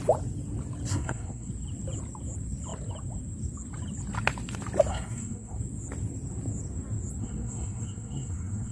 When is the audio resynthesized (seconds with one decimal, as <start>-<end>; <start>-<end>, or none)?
0.9-1.5; 4.9-5.6; 7.2-8.7